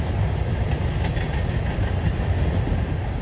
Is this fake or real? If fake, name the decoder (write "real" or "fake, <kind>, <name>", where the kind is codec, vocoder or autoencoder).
real